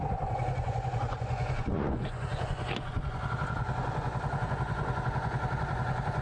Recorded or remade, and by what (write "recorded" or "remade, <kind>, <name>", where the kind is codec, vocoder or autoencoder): remade, vocoder, Vocos